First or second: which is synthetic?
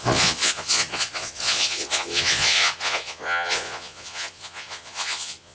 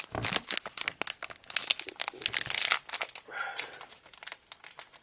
first